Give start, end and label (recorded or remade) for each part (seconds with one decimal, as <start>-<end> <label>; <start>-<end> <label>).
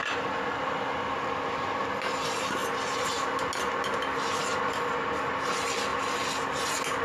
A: 0.0-7.0 recorded